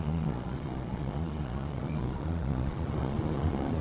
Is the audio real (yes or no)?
no